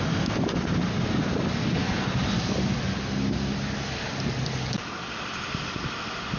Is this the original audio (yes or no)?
yes